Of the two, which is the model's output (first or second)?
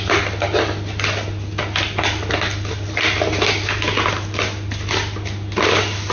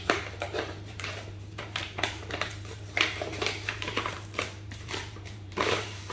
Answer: second